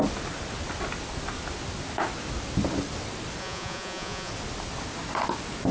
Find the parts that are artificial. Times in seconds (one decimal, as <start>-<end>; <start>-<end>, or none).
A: 3.4-4.3